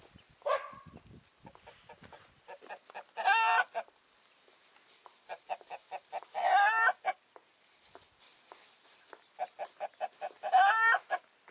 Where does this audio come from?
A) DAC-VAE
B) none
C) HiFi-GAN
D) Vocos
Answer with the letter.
B